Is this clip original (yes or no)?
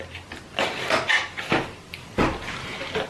yes